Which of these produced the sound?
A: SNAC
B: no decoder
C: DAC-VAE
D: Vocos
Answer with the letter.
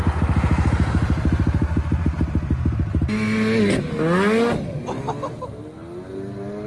B